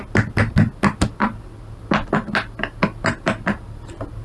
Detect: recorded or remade recorded